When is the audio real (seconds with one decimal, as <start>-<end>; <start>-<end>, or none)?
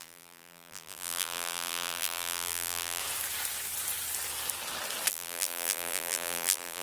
3.0-5.1